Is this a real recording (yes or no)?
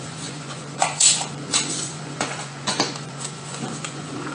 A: no